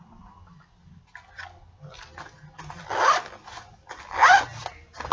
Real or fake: real